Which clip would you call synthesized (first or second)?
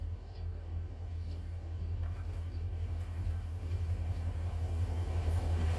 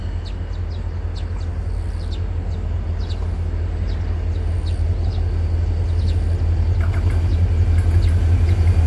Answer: first